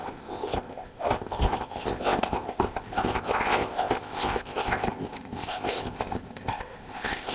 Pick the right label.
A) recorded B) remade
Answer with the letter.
B